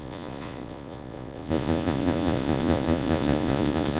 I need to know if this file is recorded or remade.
remade